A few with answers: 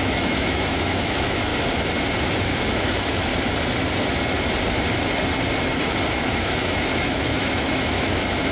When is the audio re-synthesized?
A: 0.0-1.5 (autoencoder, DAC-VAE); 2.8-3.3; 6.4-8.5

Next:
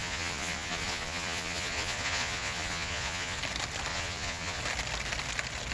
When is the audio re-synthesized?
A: 0.0-3.4 (vocoder, Vocos); 3.9-4.6

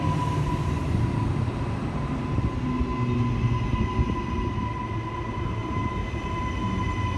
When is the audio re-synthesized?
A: 0.8-2.4 (vocoder, BigVGAN v2); 5.6-6.4

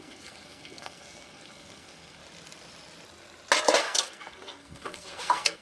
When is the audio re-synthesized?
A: 0.0-2.2 (codec, SNAC); 3.8-5.6

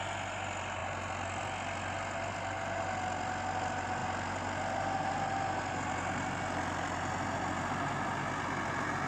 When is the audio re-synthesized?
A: none

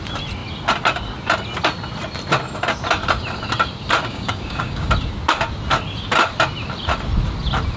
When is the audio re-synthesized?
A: 4.1-4.9 (codec, DAC)

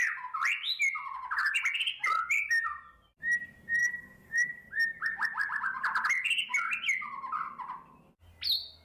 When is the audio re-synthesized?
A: 3.8-4.7 (codec, DAC)

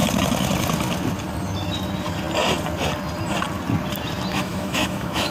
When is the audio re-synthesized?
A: 4.3-5.3 (autoencoder, DAC-VAE)